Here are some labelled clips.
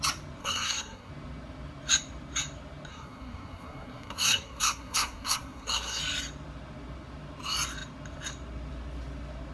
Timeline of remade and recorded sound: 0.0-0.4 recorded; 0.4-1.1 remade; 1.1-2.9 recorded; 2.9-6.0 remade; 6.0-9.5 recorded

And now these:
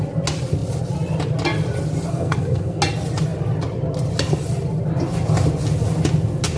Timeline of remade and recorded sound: 0.0-2.1 recorded; 2.1-2.8 remade; 2.8-6.6 recorded

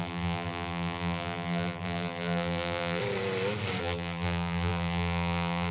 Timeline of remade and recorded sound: 0.0-3.0 remade; 3.0-3.8 recorded; 3.8-5.7 remade

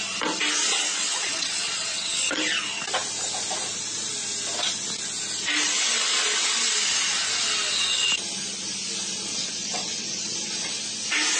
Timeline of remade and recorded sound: 0.0-0.9 recorded; 0.9-2.4 remade; 2.4-9.3 recorded; 9.3-10.8 remade; 10.8-11.4 recorded

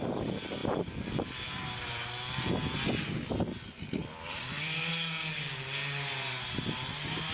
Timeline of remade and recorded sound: 0.0-0.6 recorded; 0.6-1.9 remade; 1.9-4.0 recorded; 4.0-4.9 remade; 4.9-7.3 recorded

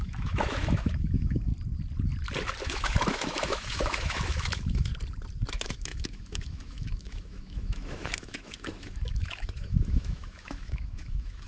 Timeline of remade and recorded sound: 0.0-1.5 remade; 1.5-2.6 recorded; 2.6-4.9 remade; 4.9-5.5 recorded; 5.5-11.5 remade